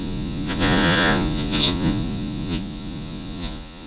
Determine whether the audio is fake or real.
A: fake